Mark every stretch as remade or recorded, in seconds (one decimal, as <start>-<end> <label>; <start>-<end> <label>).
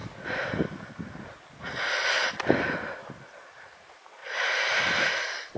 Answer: 0.0-5.6 recorded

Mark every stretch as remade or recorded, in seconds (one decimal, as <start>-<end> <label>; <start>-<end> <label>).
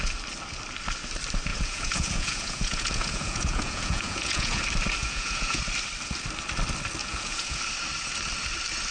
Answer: 0.0-1.5 recorded; 1.5-4.6 remade; 4.6-5.0 recorded; 5.0-5.6 remade; 5.6-7.0 recorded; 7.0-7.6 remade; 7.6-8.9 recorded